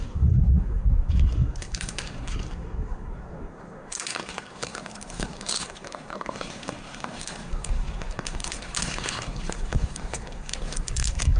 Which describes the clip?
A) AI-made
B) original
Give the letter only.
A